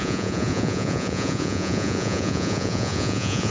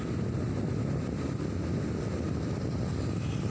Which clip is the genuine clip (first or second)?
second